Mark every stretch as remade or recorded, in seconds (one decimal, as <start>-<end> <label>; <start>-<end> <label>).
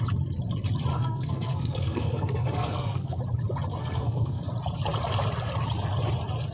0.0-0.9 recorded; 0.9-3.2 remade; 3.2-3.8 recorded; 3.8-4.4 remade; 4.4-6.5 recorded